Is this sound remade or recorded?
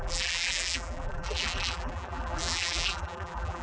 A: remade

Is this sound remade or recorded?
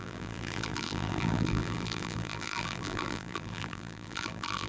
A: remade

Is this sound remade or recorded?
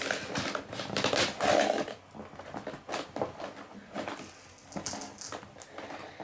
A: recorded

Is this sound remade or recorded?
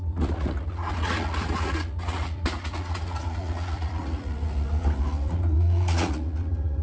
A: remade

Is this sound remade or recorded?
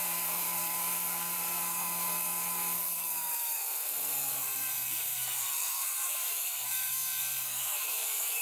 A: remade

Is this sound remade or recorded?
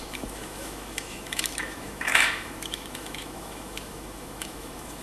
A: remade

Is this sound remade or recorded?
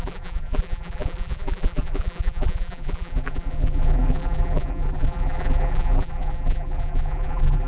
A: remade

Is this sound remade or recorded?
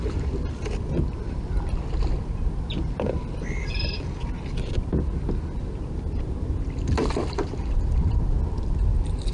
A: recorded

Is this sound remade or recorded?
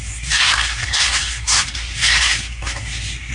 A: remade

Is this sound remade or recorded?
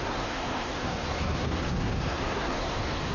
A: remade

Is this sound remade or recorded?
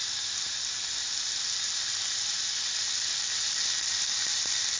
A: recorded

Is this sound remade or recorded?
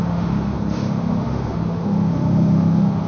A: remade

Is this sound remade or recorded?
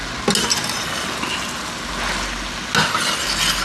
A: recorded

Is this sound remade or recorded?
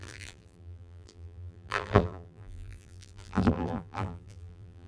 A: remade